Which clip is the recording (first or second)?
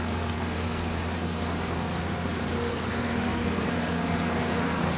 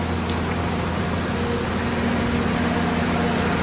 second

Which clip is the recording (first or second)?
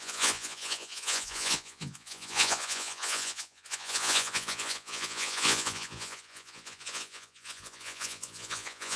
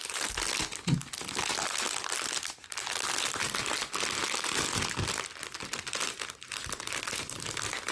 second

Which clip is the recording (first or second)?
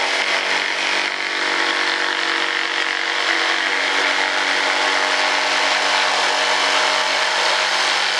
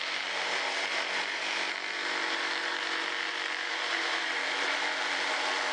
first